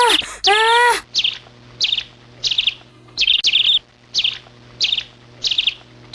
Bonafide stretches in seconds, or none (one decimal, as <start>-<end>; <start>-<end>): 0.0-2.9; 3.4-6.1